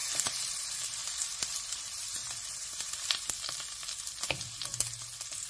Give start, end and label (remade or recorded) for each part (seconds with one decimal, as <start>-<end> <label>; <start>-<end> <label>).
0.0-0.6 remade; 0.6-1.0 recorded; 1.0-1.8 remade; 1.8-2.2 recorded; 2.2-2.9 remade; 2.9-5.5 recorded